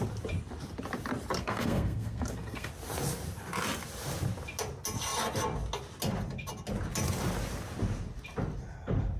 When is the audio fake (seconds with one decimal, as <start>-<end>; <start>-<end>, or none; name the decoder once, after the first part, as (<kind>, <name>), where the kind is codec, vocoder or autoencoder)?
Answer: 1.4-2.7 (codec, SNAC)